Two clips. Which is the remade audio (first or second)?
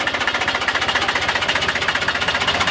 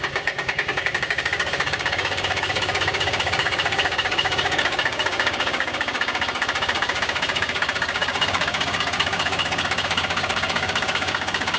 second